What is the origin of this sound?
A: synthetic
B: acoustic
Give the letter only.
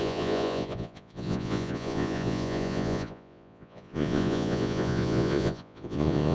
A